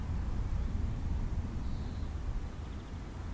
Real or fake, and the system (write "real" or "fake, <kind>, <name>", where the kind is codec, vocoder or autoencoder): real